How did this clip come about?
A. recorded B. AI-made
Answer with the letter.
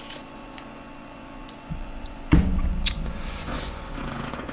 B